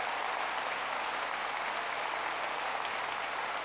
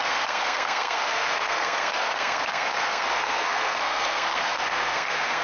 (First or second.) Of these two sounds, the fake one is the second